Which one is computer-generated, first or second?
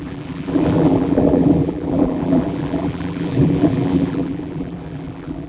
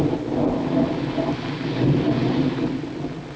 first